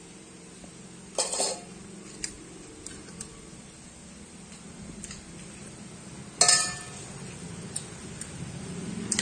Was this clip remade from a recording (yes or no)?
no